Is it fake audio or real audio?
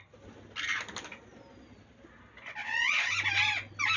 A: real